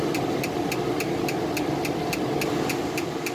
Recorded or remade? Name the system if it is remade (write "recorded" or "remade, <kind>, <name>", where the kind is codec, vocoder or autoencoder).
recorded